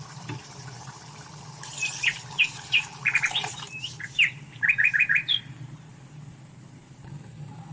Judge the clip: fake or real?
fake